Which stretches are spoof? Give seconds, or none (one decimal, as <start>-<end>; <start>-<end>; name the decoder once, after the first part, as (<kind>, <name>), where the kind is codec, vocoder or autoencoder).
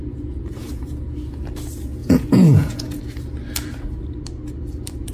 2.0-3.0 (vocoder, Vocos)